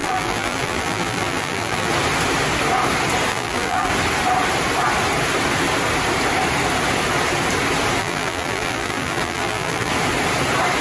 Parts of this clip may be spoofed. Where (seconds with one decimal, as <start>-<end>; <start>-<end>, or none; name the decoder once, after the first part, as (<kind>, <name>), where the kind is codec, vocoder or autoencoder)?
0.0-1.9 (vocoder, BigVGAN v2); 3.3-3.9; 8.0-9.9